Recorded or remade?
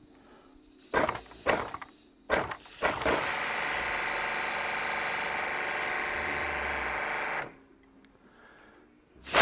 recorded